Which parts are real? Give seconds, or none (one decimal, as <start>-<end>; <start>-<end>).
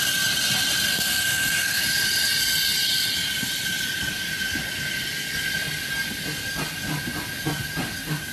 0.0-0.9; 1.8-8.3